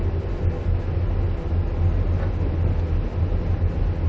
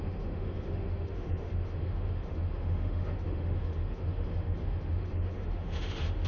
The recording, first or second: first